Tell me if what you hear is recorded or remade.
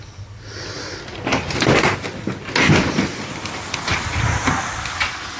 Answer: recorded